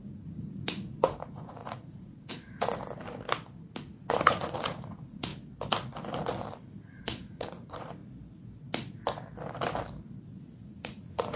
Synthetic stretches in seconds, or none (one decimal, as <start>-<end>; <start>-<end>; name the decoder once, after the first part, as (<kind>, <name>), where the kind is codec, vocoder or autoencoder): 0.0-2.8 (vocoder, Vocos); 3.8-5.3; 6.9-8.0; 10.6-11.4